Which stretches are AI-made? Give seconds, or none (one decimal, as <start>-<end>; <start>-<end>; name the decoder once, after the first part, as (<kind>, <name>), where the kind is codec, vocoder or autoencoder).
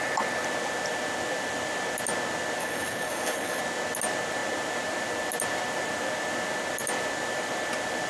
2.6-3.6 (codec, HILCodec)